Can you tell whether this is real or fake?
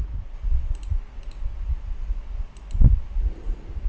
real